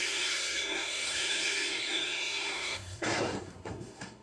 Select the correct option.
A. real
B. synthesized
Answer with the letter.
B